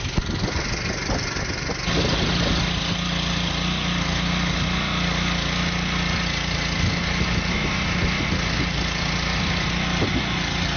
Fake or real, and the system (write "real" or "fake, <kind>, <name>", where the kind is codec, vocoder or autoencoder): real